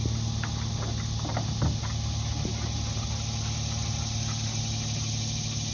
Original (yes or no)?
yes